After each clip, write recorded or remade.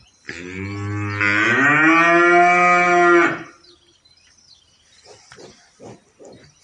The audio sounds recorded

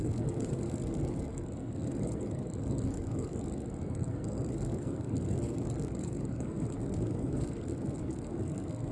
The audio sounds remade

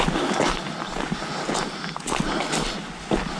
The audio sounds recorded